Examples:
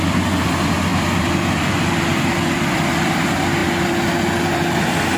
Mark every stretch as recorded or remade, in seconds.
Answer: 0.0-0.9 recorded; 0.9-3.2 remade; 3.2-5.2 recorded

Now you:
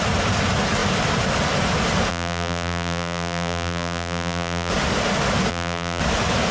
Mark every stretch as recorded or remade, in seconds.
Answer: 0.0-2.1 recorded; 2.1-4.7 remade; 4.7-5.5 recorded; 5.5-6.0 remade; 6.0-6.5 recorded

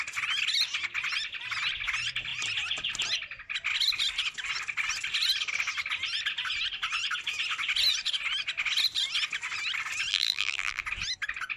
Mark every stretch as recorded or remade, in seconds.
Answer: 0.0-10.1 recorded; 10.1-10.8 remade; 10.8-11.6 recorded

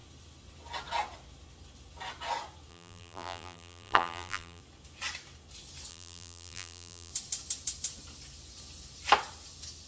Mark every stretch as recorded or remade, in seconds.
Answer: 0.0-2.7 recorded; 2.7-4.6 remade; 4.6-5.9 recorded; 5.9-7.1 remade; 7.1-9.9 recorded

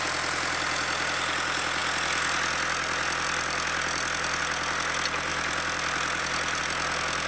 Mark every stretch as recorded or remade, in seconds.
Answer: 0.0-5.3 recorded; 5.3-6.6 remade; 6.6-7.3 recorded

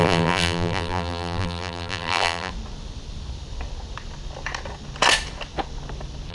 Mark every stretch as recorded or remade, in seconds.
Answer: 0.0-2.5 remade; 2.5-6.3 recorded

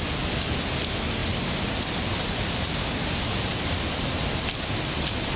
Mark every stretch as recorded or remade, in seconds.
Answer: 0.0-1.2 recorded; 1.2-4.4 remade; 4.4-5.4 recorded

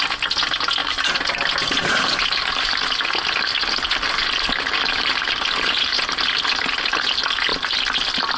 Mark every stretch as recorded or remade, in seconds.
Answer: 0.0-0.8 recorded; 0.8-2.7 remade; 2.7-4.2 recorded; 4.2-6.2 remade; 6.2-8.4 recorded